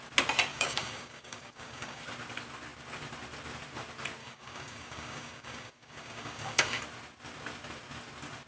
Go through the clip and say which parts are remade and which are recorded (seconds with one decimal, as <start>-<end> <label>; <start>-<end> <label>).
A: 0.0-0.5 recorded; 0.5-2.0 remade; 2.0-4.2 recorded; 4.2-6.8 remade; 6.8-8.5 recorded